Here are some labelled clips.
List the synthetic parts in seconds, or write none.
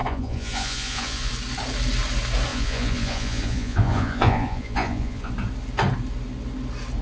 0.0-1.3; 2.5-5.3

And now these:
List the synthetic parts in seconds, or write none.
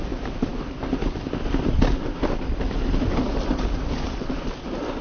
none